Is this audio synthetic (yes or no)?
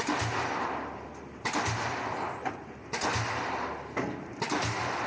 no